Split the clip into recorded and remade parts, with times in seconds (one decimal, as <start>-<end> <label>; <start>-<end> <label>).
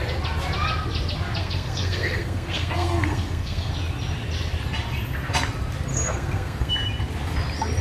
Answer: 0.0-1.4 recorded; 1.4-3.7 remade; 3.7-5.9 recorded; 5.9-6.7 remade; 6.7-7.8 recorded